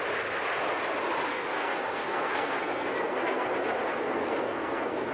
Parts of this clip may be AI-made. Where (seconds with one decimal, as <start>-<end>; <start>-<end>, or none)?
1.3-3.5; 3.9-5.1